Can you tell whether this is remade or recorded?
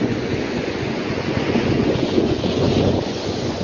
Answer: remade